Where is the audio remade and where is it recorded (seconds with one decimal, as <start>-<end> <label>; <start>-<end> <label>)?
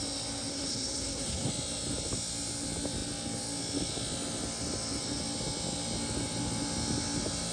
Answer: 0.0-0.5 recorded; 0.5-1.5 remade; 1.5-7.5 recorded